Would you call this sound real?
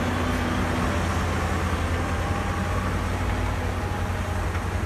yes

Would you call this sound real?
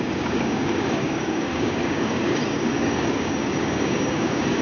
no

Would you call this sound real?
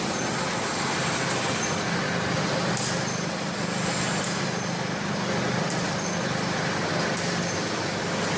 yes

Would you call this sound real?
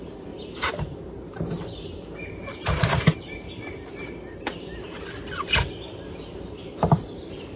no